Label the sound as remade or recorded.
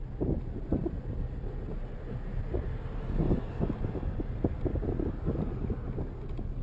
recorded